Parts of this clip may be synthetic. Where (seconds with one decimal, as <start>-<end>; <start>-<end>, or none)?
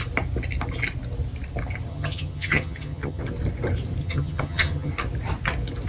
1.9-3.2; 4.0-4.9